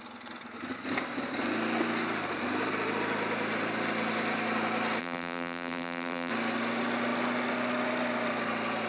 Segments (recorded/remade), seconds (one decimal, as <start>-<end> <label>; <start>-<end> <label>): 0.0-5.0 recorded; 5.0-6.3 remade; 6.3-8.9 recorded